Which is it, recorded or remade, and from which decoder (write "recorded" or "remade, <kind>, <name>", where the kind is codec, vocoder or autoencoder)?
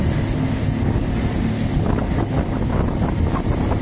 recorded